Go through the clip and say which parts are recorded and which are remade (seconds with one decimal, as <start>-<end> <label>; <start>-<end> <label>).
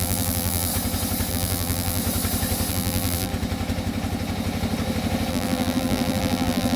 0.0-0.7 remade; 0.7-1.3 recorded; 1.3-2.0 remade; 2.0-2.7 recorded; 2.7-3.3 remade; 3.3-5.3 recorded; 5.3-6.8 remade